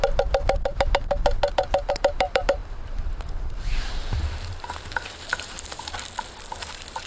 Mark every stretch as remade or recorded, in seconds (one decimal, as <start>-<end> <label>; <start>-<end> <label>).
0.0-1.9 recorded; 1.9-7.1 remade